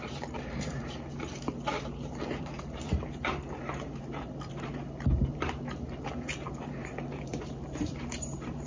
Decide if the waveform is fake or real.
fake